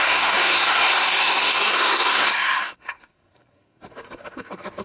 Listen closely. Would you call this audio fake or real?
fake